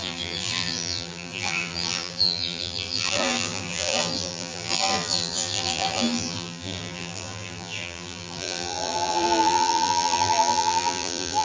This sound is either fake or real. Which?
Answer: fake